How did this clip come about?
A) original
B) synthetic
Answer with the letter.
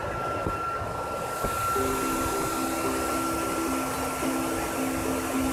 A